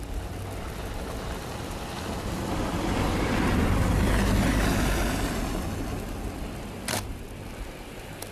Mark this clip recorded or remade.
recorded